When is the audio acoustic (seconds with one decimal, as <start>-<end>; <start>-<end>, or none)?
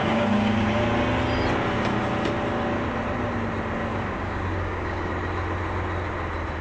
0.6-3.9; 5.1-6.6